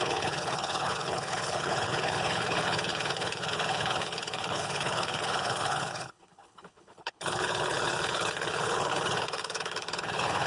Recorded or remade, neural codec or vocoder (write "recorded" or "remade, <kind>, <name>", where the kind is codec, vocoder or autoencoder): remade, codec, HILCodec